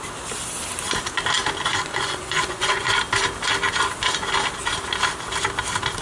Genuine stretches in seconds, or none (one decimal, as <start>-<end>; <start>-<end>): 0.0-1.7; 2.9-6.0